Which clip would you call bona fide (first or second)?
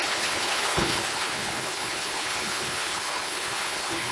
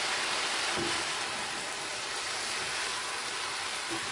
second